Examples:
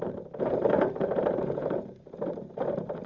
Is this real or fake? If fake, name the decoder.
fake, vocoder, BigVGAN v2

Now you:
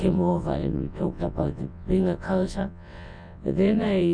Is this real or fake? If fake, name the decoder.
fake, vocoder, WaveNeXt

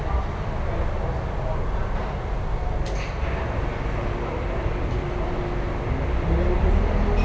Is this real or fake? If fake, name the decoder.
real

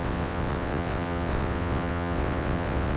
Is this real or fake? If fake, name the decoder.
fake, vocoder, WaveNeXt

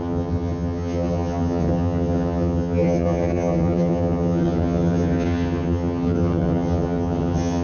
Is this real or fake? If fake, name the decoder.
fake, vocoder, HiFi-GAN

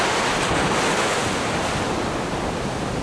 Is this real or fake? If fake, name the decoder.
real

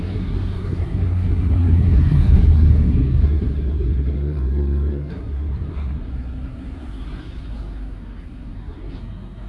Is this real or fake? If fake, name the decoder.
fake, codec, SNAC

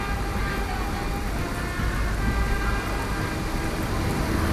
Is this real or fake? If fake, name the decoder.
real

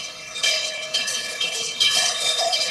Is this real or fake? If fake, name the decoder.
fake, codec, HILCodec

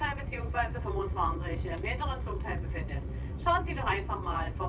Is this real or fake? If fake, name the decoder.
fake, vocoder, Vocos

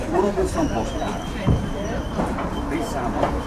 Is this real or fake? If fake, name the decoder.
fake, vocoder, BigVGAN v2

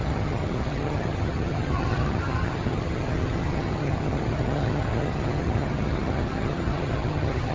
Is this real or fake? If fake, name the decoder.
fake, vocoder, HiFi-GAN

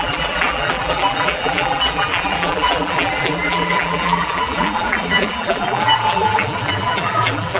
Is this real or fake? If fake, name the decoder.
fake, vocoder, BigVGAN v2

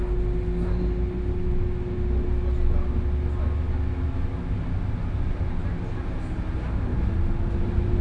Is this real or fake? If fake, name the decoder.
real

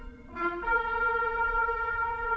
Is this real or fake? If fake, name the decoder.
fake, vocoder, Vocos